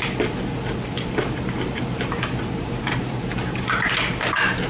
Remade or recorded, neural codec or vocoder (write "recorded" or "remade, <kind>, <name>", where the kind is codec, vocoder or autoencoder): recorded